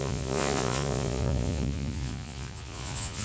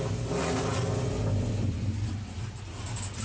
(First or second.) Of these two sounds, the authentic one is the second